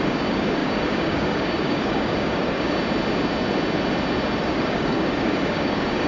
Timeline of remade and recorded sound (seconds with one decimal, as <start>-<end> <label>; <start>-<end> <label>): 0.0-2.8 remade; 2.8-4.4 recorded; 4.4-6.1 remade

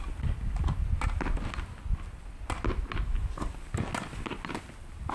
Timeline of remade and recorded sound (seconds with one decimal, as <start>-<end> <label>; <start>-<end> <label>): 0.0-5.1 recorded